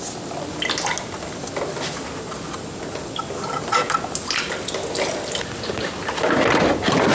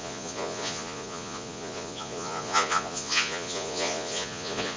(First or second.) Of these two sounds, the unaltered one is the first